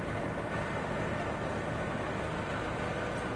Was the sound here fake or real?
real